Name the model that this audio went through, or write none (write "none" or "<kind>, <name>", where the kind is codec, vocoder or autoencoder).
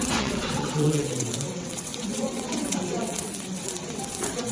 vocoder, WaveNeXt